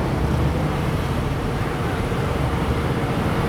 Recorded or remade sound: remade